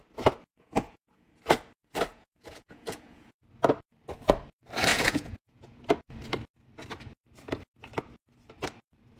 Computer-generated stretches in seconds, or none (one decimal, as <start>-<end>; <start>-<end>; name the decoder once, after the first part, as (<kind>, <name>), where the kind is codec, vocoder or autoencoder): 0.5-1.3 (vocoder, Vocos); 2.1-3.4; 4.9-5.8